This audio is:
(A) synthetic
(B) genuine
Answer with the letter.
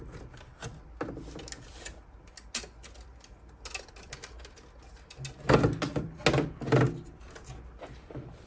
B